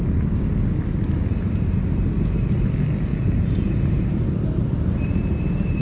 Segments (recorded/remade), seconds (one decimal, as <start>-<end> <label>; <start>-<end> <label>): 0.0-3.1 recorded; 3.1-3.7 remade; 3.7-5.8 recorded